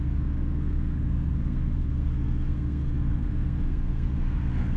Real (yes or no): no